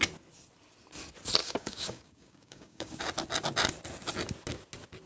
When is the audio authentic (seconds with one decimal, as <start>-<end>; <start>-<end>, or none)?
0.0-1.4; 3.0-5.1